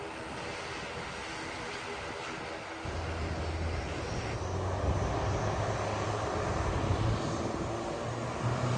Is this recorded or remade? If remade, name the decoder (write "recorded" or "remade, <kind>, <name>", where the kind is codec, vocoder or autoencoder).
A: recorded